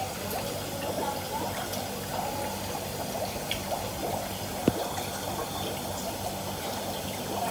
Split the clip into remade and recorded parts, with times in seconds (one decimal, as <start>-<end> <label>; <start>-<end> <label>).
0.0-7.5 recorded